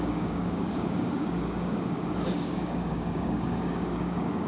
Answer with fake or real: fake